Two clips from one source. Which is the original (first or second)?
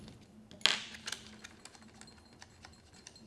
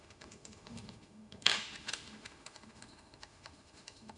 first